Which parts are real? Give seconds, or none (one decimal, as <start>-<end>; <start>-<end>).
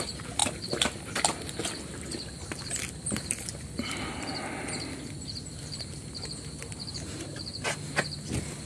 0.0-8.7